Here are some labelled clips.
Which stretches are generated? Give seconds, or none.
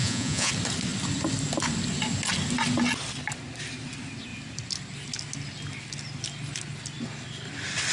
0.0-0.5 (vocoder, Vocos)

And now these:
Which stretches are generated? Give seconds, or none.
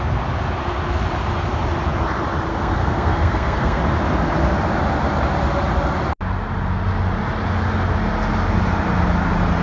2.5-3.8 (codec, SNAC)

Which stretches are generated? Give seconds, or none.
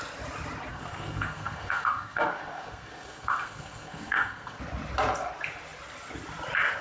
0.7-4.6 (codec, SNAC)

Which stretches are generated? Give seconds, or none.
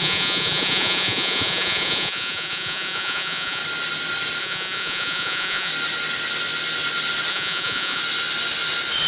0.0-3.6 (vocoder, Vocos); 4.4-5.7; 7.3-8.0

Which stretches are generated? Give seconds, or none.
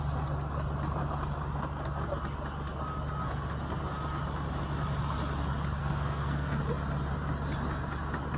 5.8-6.6 (codec, SNAC)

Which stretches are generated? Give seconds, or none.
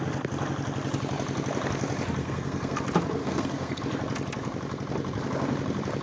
2.2-2.8 (codec, SNAC); 3.2-3.8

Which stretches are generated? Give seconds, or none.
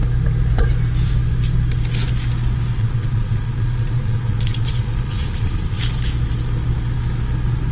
2.7-5.8 (vocoder, Vocos)